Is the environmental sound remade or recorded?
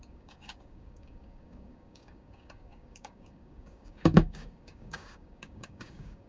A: remade